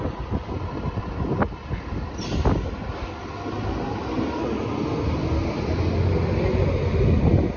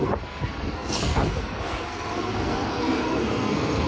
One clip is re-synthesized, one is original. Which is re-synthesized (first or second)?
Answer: second